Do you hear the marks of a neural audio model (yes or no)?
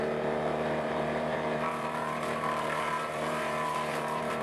yes